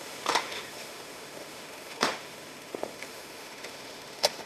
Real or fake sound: fake